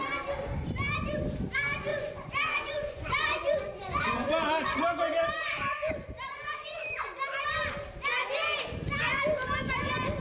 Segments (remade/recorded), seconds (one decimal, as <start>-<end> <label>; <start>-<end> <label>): 0.0-1.9 recorded; 1.9-4.8 remade; 4.8-10.2 recorded

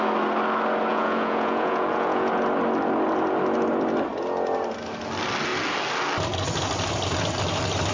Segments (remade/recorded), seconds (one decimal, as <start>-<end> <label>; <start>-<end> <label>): 0.0-0.9 recorded; 0.9-2.3 remade; 2.3-7.9 recorded

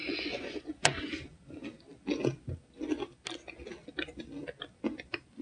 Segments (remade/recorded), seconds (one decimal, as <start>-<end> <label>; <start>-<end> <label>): 0.0-1.0 remade; 1.0-5.4 recorded